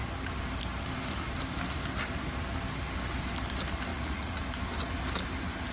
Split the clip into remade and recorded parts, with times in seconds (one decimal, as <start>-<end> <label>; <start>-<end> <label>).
0.0-3.9 recorded; 3.9-4.4 remade; 4.4-5.7 recorded